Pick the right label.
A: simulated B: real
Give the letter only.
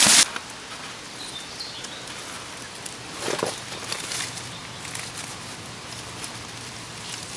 B